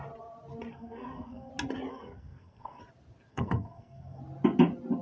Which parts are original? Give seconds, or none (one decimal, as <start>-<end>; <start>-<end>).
0.0-0.7; 1.5-1.9; 2.8-3.3; 4.2-5.0